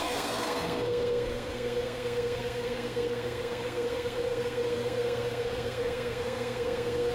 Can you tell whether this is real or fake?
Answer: fake